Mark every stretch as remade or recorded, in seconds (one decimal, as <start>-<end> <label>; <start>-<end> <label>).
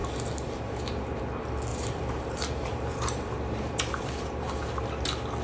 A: 0.0-1.2 remade; 1.2-1.7 recorded; 1.7-4.9 remade; 4.9-5.4 recorded